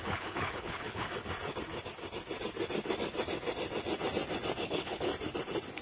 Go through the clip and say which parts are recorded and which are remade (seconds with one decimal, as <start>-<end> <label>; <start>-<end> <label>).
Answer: 0.0-1.1 remade; 1.1-4.6 recorded; 4.6-5.1 remade; 5.1-5.8 recorded